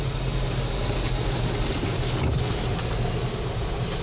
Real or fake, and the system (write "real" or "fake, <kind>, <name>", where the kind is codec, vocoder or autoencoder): real